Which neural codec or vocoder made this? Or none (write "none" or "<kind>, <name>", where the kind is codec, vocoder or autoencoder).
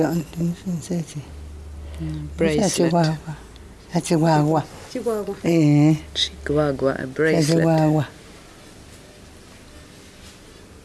none